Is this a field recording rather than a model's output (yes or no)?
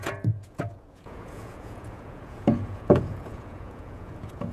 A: no